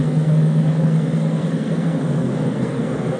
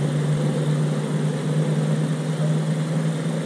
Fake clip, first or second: first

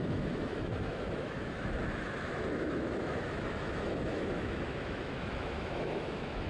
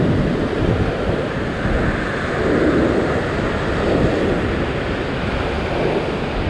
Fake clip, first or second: first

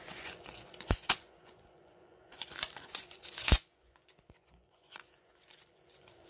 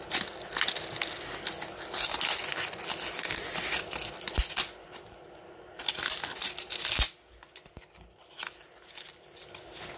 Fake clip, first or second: first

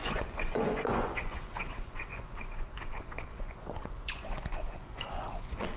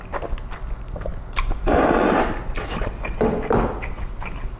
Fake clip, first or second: first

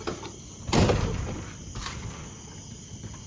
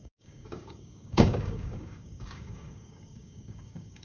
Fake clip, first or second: second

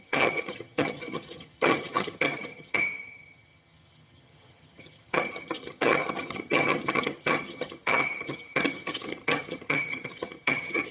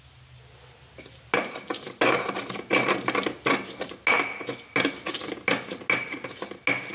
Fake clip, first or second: first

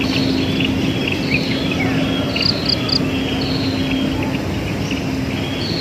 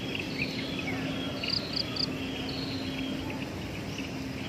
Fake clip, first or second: second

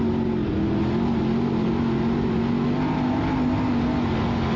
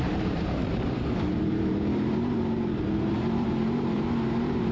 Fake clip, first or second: second